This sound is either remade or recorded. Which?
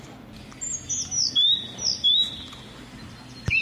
recorded